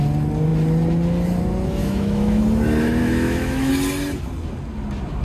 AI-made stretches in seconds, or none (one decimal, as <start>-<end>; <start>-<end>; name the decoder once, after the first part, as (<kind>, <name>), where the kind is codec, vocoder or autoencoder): 1.8-2.4 (autoencoder, DAC-VAE); 3.0-3.7